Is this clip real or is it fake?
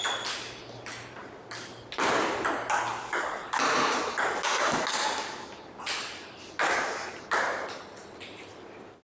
real